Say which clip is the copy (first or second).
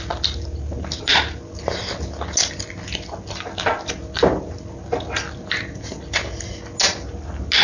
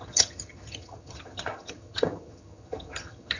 second